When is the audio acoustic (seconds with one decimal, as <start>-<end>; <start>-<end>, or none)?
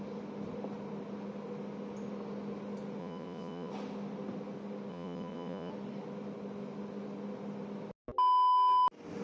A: 0.0-3.0; 3.7-4.9; 5.7-9.2